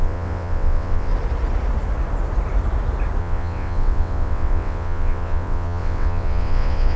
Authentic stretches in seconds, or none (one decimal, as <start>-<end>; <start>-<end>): 1.1-3.2